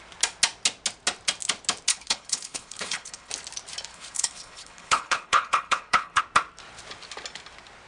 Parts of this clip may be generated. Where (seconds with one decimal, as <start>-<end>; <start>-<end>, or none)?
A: 1.9-3.3; 3.9-6.2